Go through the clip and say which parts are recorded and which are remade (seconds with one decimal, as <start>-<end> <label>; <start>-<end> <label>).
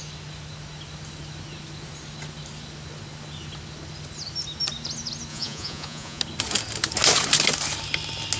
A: 0.0-5.3 recorded; 5.3-6.2 remade; 6.2-8.4 recorded